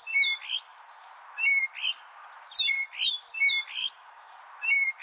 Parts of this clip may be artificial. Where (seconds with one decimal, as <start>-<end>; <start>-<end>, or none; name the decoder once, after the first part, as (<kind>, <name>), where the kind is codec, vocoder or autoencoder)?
3.8-4.4 (autoencoder, DAC-VAE)